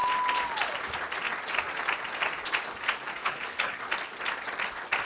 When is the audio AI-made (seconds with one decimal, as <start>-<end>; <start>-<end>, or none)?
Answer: 3.2-3.8

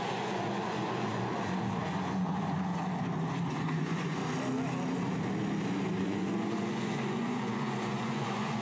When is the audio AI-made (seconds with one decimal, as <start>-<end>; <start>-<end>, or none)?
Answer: 0.0-2.7; 3.5-4.2; 6.0-8.6

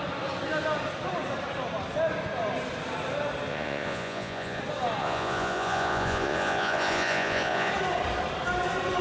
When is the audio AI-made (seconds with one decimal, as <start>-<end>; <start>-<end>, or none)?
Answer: 3.5-4.6; 5.0-7.7